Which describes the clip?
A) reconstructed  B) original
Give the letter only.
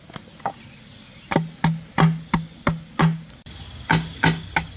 B